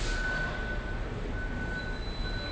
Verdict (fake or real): real